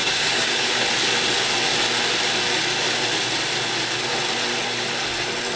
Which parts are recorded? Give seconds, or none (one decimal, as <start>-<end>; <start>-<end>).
0.7-5.6